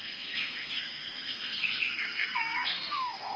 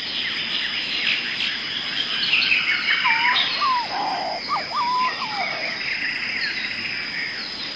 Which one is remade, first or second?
first